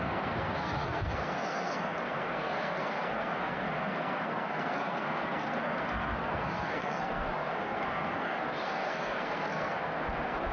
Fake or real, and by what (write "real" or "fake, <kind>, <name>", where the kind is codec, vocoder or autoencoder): fake, codec, SNAC